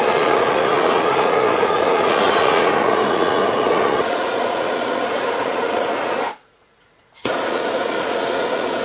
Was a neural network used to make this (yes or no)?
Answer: yes